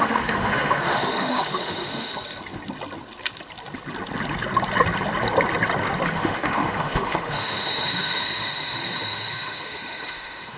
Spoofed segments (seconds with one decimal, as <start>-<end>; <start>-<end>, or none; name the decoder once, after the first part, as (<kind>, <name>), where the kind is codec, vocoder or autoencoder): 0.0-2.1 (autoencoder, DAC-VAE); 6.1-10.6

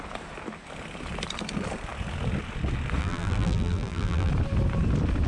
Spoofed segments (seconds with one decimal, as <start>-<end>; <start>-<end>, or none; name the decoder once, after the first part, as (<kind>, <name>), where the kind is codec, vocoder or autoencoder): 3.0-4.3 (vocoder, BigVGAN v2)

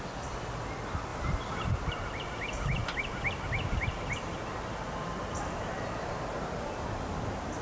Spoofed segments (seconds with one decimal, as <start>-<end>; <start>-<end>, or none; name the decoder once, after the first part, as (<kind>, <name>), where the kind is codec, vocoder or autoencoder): 1.1-1.7 (vocoder, BigVGAN v2)

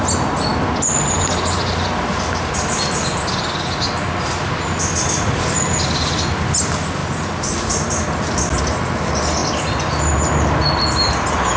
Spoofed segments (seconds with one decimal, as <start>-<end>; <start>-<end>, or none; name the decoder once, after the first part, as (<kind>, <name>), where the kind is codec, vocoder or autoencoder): none

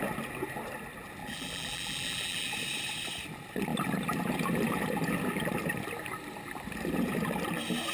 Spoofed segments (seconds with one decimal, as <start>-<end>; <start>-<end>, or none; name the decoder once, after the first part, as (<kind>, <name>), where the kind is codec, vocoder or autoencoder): 1.2-2.5 (vocoder, BigVGAN v2)

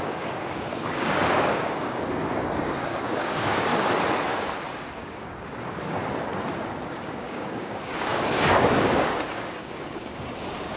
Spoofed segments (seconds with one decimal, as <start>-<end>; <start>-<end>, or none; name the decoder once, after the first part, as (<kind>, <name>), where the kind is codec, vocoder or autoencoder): 0.0-3.7 (codec, DAC); 5.0-6.0; 6.8-10.8

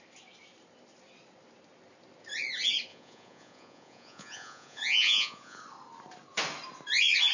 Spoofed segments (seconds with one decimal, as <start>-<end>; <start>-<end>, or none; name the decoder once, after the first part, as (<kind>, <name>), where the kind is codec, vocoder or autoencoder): 2.9-5.6 (vocoder, Vocos)

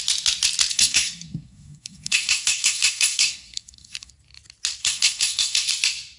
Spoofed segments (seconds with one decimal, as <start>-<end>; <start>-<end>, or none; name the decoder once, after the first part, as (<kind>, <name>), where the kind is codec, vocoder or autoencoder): 0.7-4.1 (codec, SNAC); 4.8-5.7